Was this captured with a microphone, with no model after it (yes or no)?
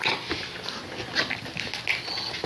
yes